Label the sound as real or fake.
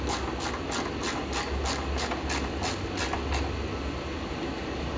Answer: real